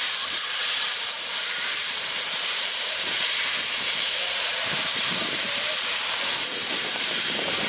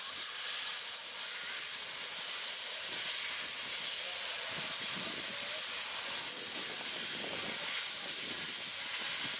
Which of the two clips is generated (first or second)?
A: first